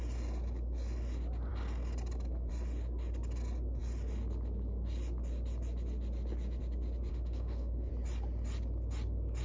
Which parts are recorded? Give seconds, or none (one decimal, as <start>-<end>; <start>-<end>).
0.0-7.1; 7.9-9.4